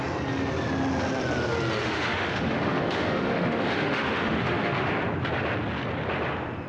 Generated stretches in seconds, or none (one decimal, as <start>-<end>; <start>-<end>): 1.8-4.9